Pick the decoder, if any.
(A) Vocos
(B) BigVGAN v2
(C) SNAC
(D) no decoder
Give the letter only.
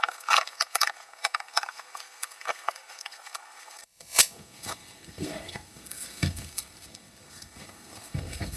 C